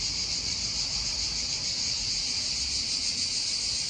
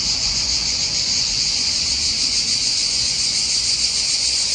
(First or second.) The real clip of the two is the first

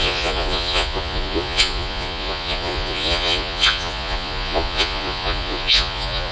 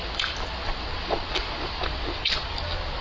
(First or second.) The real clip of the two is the second